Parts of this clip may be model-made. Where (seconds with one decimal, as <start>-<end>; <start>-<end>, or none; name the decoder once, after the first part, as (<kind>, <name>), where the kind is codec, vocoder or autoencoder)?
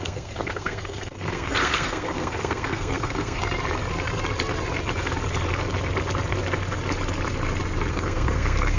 0.0-3.4 (codec, SNAC); 7.9-8.8